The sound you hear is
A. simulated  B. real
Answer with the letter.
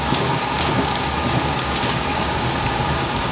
A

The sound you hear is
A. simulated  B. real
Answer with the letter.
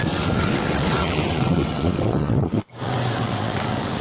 A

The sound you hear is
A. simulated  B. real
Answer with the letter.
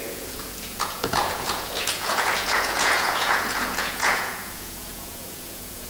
A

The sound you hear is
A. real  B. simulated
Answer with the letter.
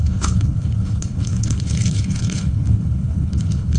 B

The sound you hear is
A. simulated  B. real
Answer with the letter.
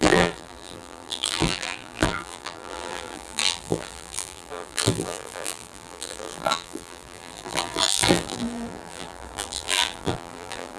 A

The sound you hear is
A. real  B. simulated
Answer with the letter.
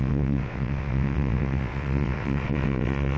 B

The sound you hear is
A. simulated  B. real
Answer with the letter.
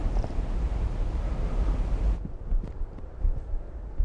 A